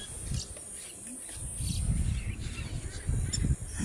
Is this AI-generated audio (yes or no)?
no